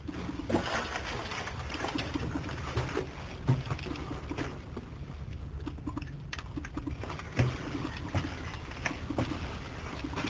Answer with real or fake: real